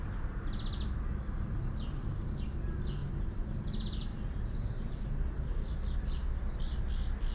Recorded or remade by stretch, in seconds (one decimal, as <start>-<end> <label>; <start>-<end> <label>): 0.0-3.0 recorded; 3.0-5.0 remade; 5.0-7.3 recorded